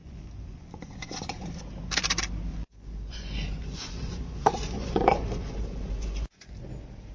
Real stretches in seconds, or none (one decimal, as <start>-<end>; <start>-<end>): 1.5-2.5; 6.5-7.1